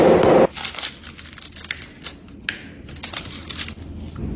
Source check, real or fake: real